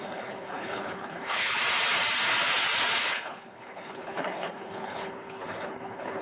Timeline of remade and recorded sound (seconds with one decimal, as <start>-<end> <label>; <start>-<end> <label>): 0.0-1.6 remade; 1.6-3.0 recorded; 3.0-6.2 remade